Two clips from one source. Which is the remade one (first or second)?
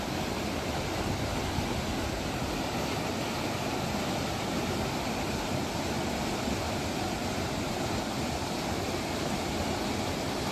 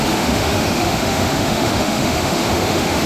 second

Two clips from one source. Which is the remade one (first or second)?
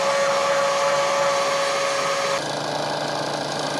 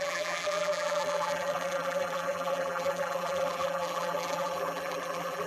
second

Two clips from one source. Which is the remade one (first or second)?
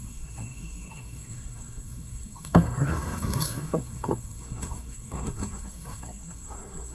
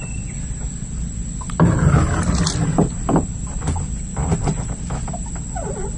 first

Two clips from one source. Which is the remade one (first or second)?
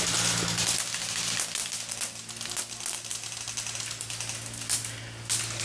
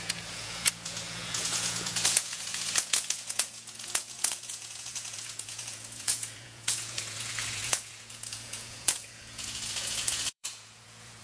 second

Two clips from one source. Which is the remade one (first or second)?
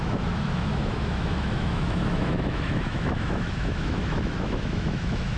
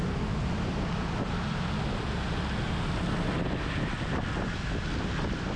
first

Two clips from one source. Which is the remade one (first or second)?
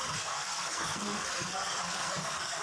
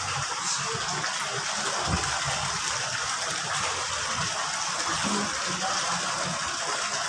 first